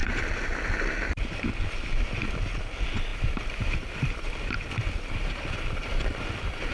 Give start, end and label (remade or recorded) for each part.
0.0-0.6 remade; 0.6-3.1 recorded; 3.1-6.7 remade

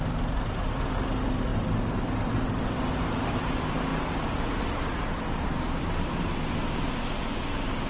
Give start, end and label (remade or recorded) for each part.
0.0-1.5 remade; 1.5-2.3 recorded; 2.3-3.9 remade; 3.9-4.4 recorded; 4.4-6.3 remade; 6.3-7.9 recorded

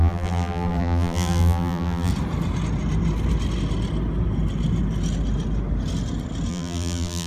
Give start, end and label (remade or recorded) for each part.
0.0-2.1 remade; 2.1-6.5 recorded; 6.5-7.3 remade

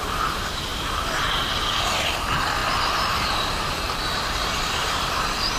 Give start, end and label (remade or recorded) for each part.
0.0-0.7 remade; 0.7-1.3 recorded; 1.3-5.6 remade

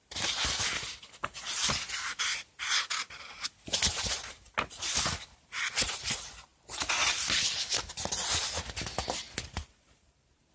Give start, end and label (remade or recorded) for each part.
0.0-9.6 recorded; 9.6-10.5 remade

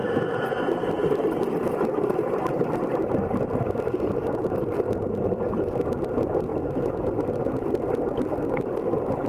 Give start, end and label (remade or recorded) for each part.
0.0-1.0 recorded; 1.0-3.9 remade; 3.9-6.5 recorded; 6.5-9.3 remade